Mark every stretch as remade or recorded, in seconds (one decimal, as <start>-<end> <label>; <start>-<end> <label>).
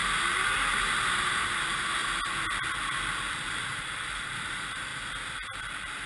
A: 0.0-1.2 recorded; 1.2-2.0 remade; 2.0-3.3 recorded; 3.3-4.9 remade; 4.9-5.6 recorded; 5.6-6.1 remade